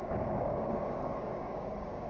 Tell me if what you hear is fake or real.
fake